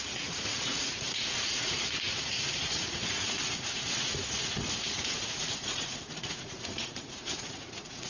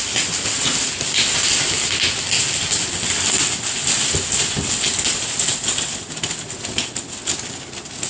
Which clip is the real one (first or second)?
second